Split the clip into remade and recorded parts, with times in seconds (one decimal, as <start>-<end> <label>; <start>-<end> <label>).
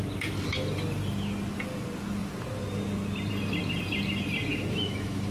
0.0-4.5 recorded; 4.5-5.3 remade